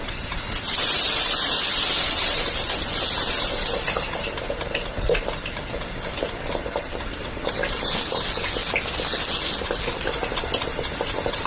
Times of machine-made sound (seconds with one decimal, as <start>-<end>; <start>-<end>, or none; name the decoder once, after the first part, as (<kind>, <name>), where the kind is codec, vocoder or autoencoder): 0.0-8.6 (vocoder, BigVGAN v2)